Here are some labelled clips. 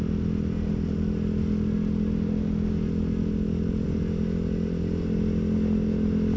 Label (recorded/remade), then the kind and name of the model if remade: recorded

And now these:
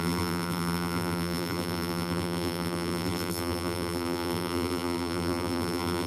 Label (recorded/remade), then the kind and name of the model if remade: remade, vocoder, BigVGAN v2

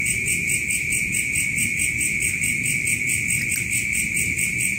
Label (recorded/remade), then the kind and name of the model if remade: recorded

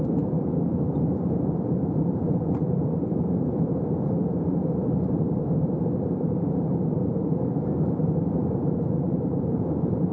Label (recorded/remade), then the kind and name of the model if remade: remade, vocoder, BigVGAN v2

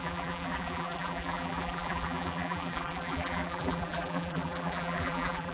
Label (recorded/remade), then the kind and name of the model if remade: remade, vocoder, BigVGAN v2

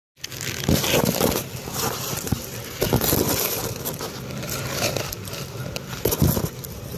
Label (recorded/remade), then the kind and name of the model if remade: recorded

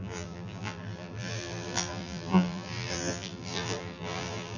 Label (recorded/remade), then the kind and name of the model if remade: remade, vocoder, BigVGAN v2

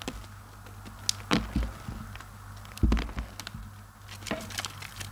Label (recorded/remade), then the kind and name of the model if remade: recorded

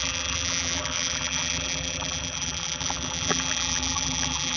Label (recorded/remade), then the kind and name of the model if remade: remade, vocoder, BigVGAN v2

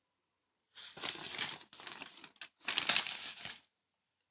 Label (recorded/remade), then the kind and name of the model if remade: recorded